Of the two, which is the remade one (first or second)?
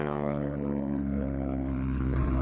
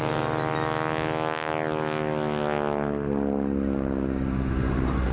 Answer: first